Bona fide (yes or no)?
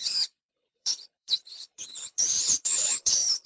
no